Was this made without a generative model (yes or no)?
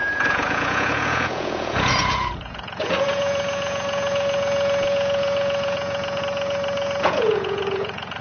no